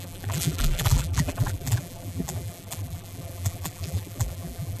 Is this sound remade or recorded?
remade